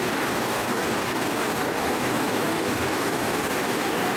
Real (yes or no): no